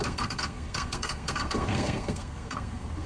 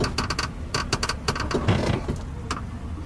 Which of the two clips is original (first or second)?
second